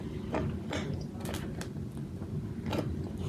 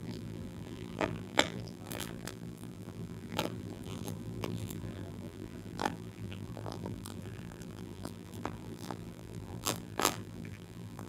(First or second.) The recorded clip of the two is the first